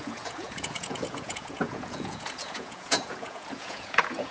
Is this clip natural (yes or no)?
no